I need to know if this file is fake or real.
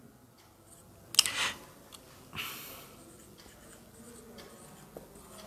real